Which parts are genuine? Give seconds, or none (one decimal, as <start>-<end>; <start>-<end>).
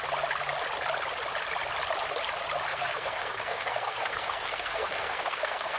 0.0-2.7